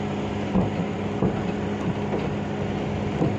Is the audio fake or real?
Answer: real